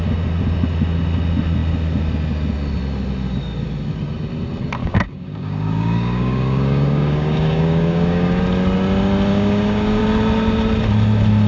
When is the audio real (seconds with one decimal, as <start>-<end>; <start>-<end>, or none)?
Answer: 0.0-4.8; 8.4-9.3; 10.0-11.5